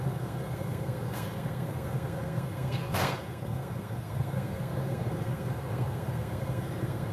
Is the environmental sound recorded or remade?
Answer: remade